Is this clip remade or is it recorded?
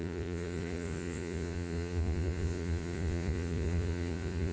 remade